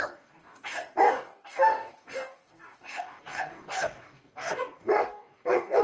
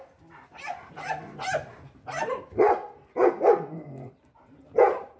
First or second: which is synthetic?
first